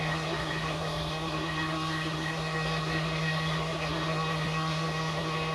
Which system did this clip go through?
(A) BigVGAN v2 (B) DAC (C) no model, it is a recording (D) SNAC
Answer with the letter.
D